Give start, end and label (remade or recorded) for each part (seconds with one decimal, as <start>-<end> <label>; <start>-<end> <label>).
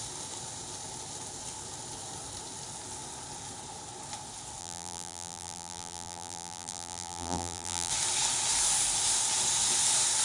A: 0.0-4.6 recorded; 4.6-7.9 remade; 7.9-10.2 recorded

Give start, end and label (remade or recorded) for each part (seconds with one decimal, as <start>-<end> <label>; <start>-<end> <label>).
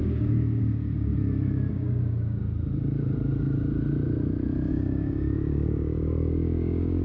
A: 0.0-1.1 remade; 1.1-1.7 recorded; 1.7-2.4 remade; 2.4-4.7 recorded; 4.7-7.0 remade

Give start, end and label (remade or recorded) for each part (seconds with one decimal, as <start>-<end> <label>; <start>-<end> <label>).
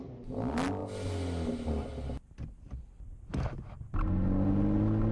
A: 0.0-5.1 recorded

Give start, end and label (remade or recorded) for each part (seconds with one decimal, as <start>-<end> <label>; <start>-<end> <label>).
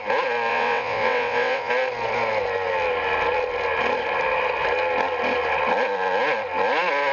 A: 0.0-0.5 recorded; 0.5-1.7 remade; 1.7-7.1 recorded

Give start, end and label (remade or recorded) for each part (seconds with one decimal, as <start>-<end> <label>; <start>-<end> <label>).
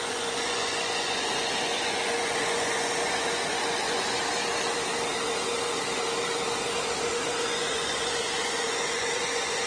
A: 0.0-4.2 remade; 4.2-7.1 recorded; 7.1-9.7 remade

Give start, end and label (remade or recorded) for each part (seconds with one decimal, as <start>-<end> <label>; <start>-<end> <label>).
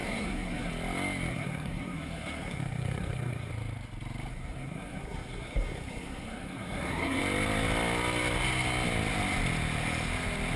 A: 0.0-0.7 remade; 0.7-1.3 recorded; 1.3-3.5 remade; 3.5-4.3 recorded; 4.3-7.2 remade; 7.2-10.6 recorded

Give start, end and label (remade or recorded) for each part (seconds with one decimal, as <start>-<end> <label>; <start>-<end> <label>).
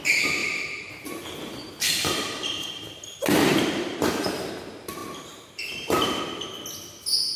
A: 0.0-0.4 recorded; 0.4-4.5 remade; 4.5-5.0 recorded; 5.0-6.2 remade; 6.2-7.4 recorded